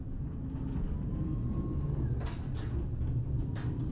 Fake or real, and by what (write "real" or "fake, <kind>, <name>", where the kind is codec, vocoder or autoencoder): real